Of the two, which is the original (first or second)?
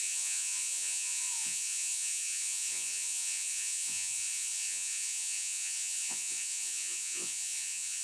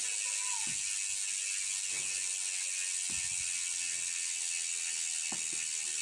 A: second